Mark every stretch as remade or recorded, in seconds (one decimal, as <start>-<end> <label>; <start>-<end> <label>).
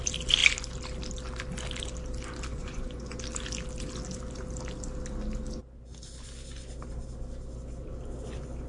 0.0-2.5 recorded; 2.5-3.2 remade; 3.2-8.7 recorded